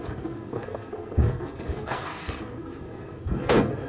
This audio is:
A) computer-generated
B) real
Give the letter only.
A